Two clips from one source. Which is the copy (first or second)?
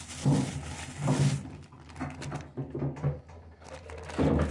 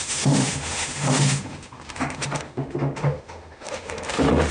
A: second